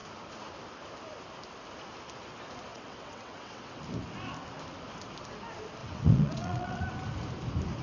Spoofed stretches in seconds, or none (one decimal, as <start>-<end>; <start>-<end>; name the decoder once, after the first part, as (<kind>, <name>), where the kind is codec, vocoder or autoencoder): 2.7-3.8 (vocoder, WaveNeXt); 5.8-6.8